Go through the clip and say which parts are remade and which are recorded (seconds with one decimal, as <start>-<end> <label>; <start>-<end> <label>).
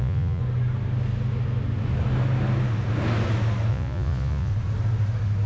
0.0-0.4 remade; 0.4-3.7 recorded; 3.7-4.5 remade; 4.5-5.5 recorded